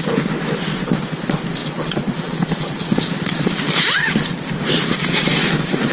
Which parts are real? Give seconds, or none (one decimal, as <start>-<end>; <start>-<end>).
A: 0.0-1.6; 3.5-5.9